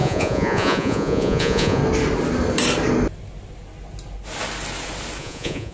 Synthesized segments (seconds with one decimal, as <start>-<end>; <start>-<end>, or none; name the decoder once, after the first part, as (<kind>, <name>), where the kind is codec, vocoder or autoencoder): 0.0-1.8 (vocoder, Vocos); 5.2-5.7